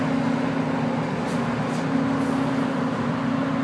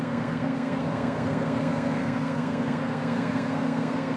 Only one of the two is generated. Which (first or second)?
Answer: second